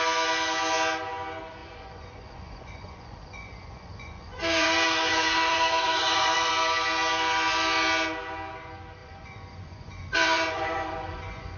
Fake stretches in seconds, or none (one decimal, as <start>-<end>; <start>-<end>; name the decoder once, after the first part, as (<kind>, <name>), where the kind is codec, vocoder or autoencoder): 1.6-6.5 (vocoder, Vocos); 9.0-11.6